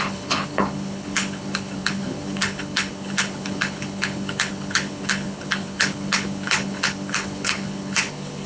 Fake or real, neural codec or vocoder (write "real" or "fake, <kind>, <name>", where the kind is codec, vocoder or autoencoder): fake, codec, HILCodec